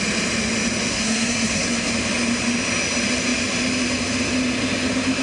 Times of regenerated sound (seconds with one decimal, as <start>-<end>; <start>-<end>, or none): 0.9-1.9